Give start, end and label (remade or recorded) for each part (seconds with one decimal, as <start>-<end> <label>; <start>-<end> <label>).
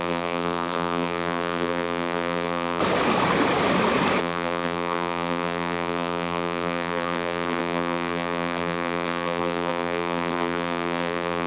0.0-2.8 remade; 2.8-4.2 recorded; 4.2-11.5 remade